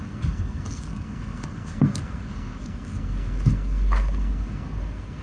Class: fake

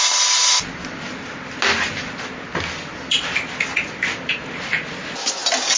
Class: real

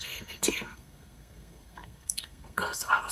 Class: fake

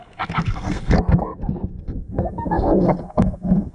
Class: fake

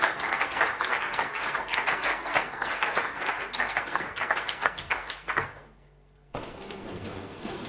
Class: fake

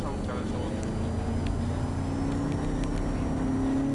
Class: real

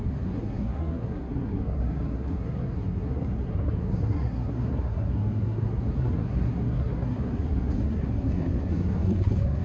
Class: fake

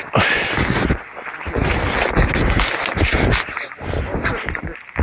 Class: real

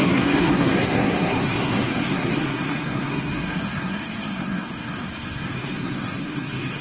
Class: fake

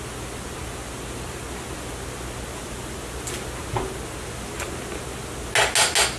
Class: real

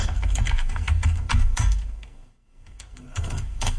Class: fake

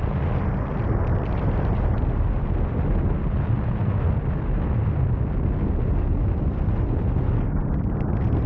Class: real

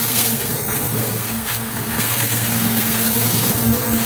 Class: fake